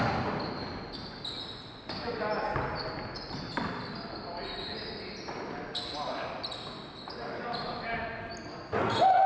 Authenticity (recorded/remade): recorded